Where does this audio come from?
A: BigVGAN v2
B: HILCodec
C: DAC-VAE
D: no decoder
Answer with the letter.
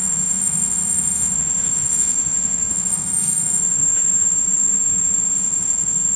C